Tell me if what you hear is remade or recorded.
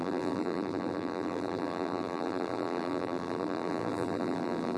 remade